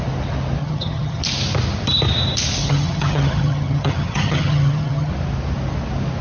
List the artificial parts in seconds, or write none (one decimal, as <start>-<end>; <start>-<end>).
0.6-1.2; 2.6-5.1

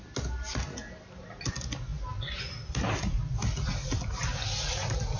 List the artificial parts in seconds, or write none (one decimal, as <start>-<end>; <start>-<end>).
none

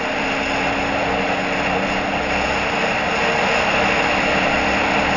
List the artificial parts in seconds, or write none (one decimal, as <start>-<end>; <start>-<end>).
none

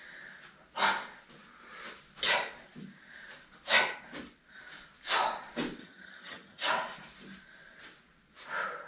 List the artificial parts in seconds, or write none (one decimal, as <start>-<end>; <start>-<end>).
5.8-6.7

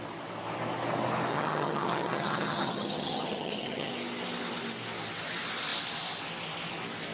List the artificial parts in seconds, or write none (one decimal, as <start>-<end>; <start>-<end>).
1.3-3.9

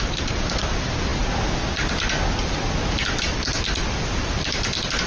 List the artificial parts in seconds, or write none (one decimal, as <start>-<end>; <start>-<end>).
none